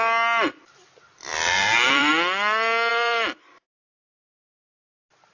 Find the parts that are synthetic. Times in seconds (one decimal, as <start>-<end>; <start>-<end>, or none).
1.3-2.1; 2.9-4.3